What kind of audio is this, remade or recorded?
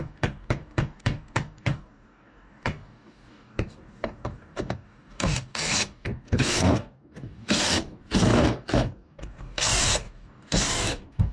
remade